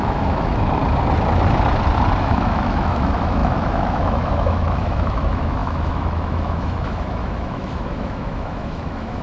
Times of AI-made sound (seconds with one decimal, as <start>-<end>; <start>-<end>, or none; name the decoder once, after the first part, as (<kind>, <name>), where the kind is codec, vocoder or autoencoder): 0.0-0.8 (autoencoder, DAC-VAE); 2.2-9.2